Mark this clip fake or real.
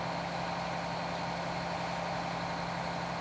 real